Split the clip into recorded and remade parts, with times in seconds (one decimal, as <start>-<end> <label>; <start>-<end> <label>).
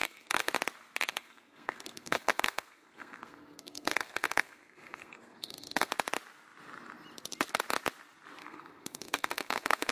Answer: 0.0-0.5 remade; 0.5-1.1 recorded; 1.1-5.9 remade; 5.9-8.4 recorded; 8.4-9.9 remade